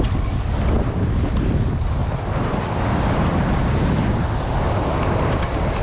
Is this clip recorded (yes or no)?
yes